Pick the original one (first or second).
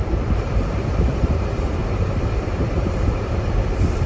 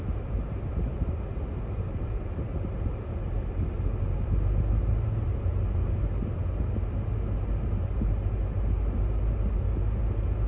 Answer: second